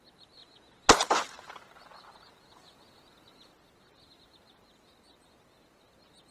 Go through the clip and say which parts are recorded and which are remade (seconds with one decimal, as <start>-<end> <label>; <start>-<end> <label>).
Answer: 0.0-6.3 recorded